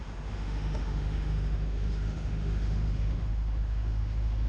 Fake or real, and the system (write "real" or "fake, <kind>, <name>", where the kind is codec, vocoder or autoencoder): fake, autoencoder, DAC-VAE